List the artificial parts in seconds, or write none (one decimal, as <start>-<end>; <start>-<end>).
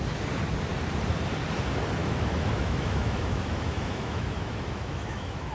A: 2.0-5.5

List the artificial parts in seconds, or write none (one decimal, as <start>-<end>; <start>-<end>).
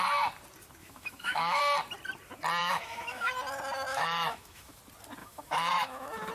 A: 0.8-1.6; 2.6-3.3; 3.9-4.8; 5.2-6.3